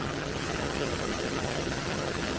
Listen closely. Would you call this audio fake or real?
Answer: fake